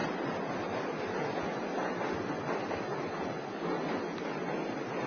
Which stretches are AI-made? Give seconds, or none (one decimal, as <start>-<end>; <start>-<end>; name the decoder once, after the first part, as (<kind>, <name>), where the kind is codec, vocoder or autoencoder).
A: none